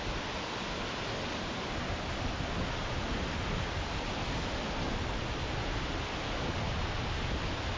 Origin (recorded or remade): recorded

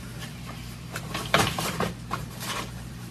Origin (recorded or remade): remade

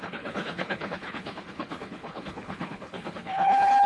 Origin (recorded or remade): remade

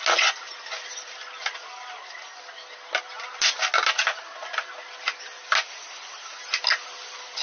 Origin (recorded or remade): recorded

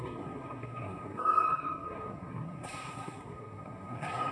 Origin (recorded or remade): remade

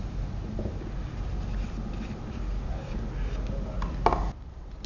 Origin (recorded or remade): recorded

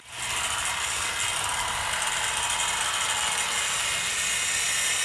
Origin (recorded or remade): recorded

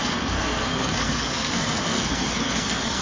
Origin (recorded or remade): remade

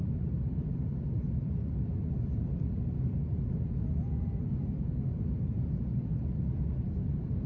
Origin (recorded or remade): recorded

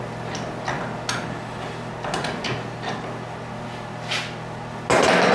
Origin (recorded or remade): recorded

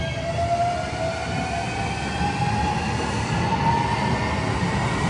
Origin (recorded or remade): recorded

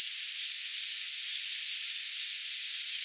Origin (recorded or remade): recorded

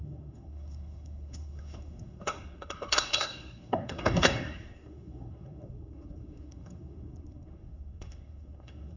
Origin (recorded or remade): remade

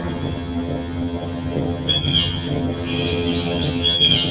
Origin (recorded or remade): remade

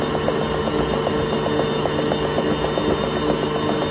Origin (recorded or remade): recorded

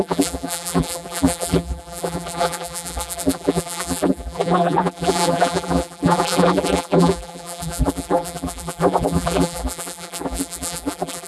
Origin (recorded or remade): remade